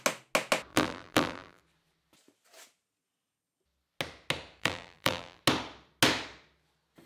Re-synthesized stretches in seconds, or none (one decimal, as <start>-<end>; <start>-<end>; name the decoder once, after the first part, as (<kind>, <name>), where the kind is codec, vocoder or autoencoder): 0.7-1.6 (vocoder, BigVGAN v2); 4.6-5.4